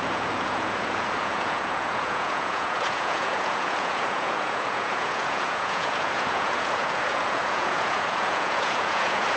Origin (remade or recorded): remade